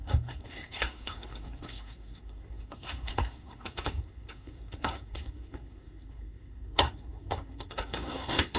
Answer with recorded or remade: remade